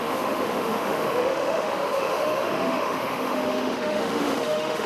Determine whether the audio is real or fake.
fake